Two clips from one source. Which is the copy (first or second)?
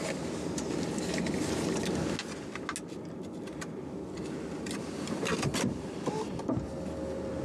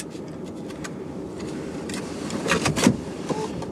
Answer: second